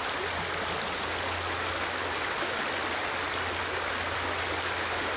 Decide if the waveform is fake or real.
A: real